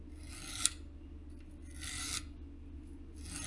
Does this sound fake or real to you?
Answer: real